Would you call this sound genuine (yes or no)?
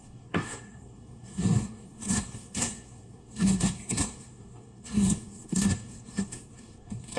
no